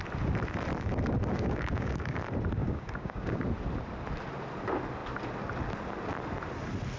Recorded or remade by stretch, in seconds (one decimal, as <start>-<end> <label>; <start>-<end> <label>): 0.0-1.3 recorded; 1.3-2.2 remade; 2.2-2.6 recorded; 2.6-3.4 remade; 3.4-7.0 recorded